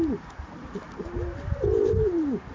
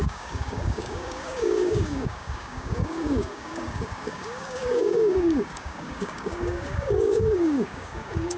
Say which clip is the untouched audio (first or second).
first